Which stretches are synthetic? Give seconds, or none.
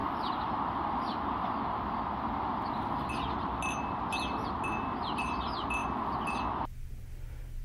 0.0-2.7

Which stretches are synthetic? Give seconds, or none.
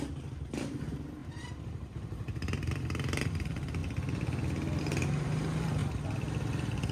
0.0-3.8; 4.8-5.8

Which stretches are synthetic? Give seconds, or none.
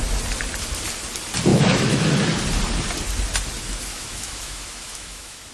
1.5-2.1; 3.9-5.5